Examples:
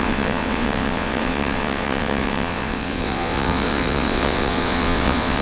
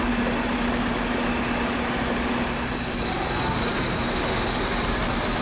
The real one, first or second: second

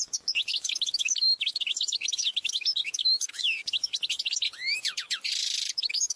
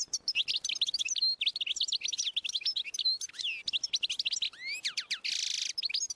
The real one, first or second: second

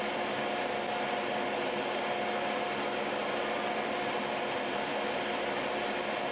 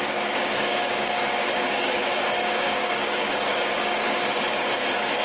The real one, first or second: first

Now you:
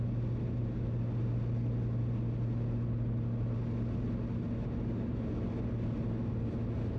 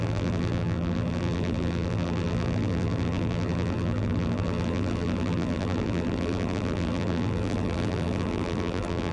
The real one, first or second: first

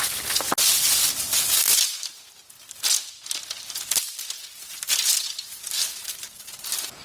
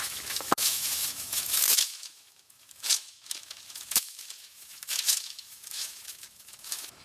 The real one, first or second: first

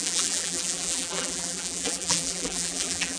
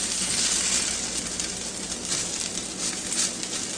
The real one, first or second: second